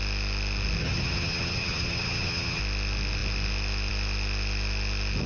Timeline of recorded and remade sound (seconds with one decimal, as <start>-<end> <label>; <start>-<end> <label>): 0.0-0.8 recorded; 0.8-2.6 remade; 2.6-5.3 recorded